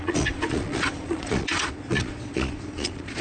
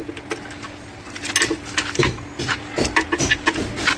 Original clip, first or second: second